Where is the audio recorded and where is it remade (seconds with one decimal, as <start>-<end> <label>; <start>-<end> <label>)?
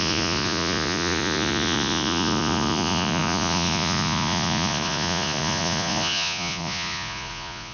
0.0-7.7 remade